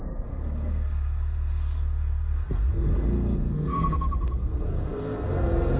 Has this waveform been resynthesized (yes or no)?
yes